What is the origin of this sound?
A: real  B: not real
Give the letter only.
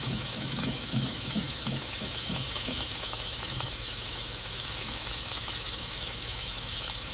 B